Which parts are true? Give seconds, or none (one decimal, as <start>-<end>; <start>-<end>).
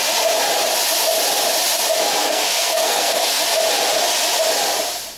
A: 0.0-2.2; 3.4-5.2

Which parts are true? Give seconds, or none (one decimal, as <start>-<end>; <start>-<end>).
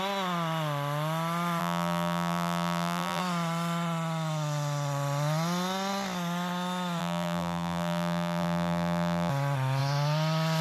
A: 0.0-1.6; 3.2-7.0; 9.3-10.6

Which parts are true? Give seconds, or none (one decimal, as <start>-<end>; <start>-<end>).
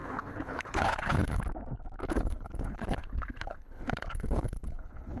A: 1.4-2.0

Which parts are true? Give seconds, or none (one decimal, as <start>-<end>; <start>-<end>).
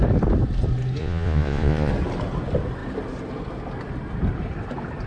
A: 0.0-1.0; 1.9-5.1